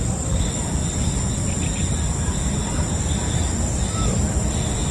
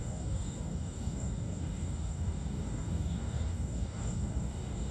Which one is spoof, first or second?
second